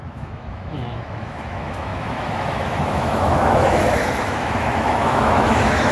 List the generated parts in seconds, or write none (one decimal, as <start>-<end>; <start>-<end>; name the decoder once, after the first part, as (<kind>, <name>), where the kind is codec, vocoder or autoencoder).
0.0-5.9 (autoencoder, DAC-VAE)